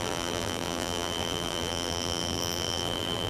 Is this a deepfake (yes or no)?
yes